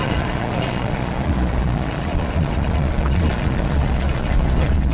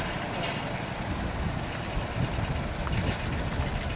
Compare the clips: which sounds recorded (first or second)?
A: second